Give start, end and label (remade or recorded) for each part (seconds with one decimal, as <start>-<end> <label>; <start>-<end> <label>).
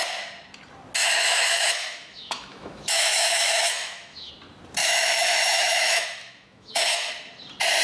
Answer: 0.0-1.0 recorded; 1.0-4.3 remade; 4.3-4.8 recorded; 4.8-7.1 remade; 7.1-7.8 recorded